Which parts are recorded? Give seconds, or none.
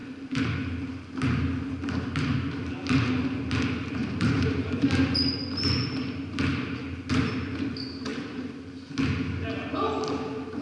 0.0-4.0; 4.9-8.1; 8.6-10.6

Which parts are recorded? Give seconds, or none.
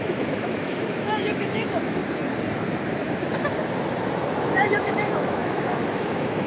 2.0-4.5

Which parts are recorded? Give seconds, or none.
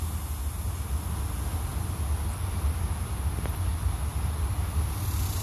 0.0-5.4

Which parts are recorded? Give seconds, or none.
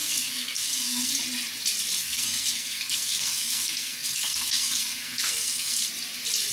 1.1-2.0; 5.9-6.5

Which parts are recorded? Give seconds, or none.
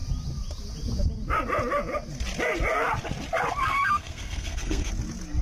0.0-3.6; 4.9-5.4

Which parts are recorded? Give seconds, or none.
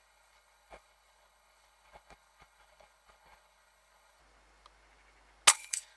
4.2-5.5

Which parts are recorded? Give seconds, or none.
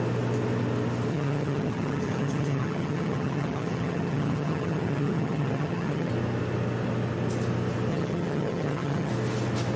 0.0-1.1; 6.1-7.9; 9.1-9.8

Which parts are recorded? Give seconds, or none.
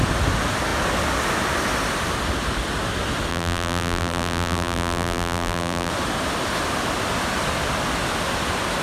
0.0-3.3; 5.9-8.8